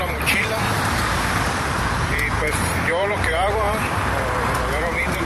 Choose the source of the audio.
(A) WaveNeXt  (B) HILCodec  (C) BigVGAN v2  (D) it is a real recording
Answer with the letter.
C